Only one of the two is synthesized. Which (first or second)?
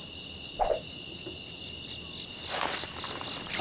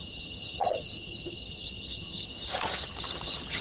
second